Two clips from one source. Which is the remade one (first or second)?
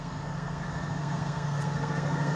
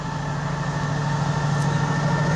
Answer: first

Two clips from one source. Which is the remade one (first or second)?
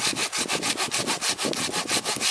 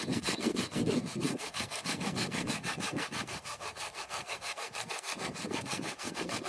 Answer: second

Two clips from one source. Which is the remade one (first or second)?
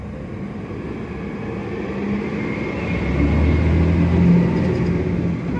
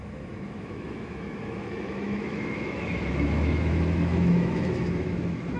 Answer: second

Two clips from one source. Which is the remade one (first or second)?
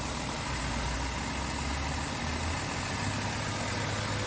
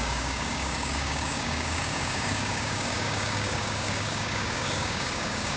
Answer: second